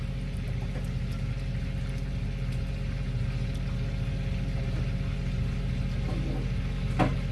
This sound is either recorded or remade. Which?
recorded